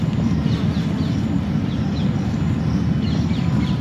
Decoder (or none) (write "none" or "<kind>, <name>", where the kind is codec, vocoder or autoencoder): none